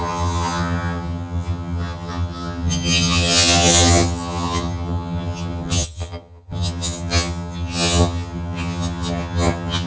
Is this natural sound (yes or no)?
no